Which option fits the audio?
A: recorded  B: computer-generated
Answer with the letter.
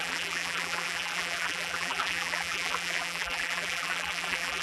B